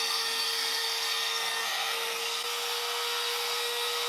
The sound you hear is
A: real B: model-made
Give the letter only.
B